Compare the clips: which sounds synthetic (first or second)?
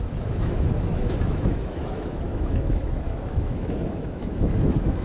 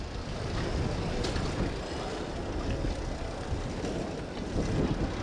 first